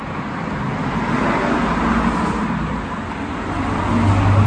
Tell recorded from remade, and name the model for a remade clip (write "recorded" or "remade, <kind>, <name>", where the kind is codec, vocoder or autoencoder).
recorded